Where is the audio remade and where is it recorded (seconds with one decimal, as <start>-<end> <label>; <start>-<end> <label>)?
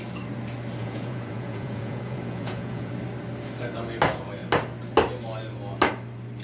0.0-0.8 recorded; 0.8-2.9 remade; 2.9-6.4 recorded